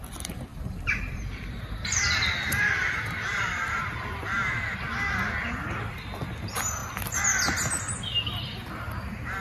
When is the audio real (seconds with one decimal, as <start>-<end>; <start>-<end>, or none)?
0.0-0.5; 4.5-9.4